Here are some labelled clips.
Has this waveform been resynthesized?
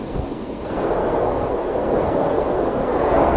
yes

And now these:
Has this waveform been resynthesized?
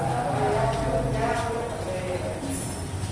no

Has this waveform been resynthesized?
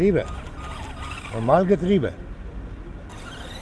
no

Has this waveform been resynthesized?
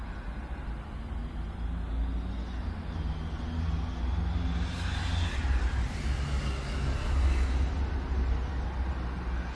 no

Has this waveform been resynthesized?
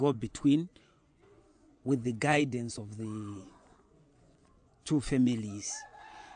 yes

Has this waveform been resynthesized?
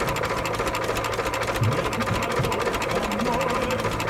no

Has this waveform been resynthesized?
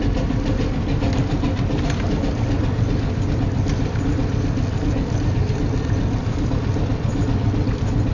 no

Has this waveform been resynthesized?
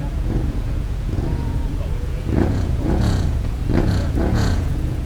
yes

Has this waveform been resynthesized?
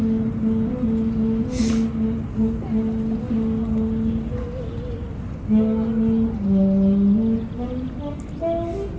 no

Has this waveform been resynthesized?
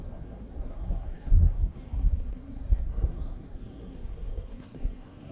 yes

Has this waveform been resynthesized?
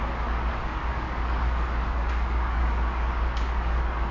yes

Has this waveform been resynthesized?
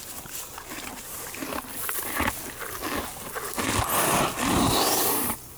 no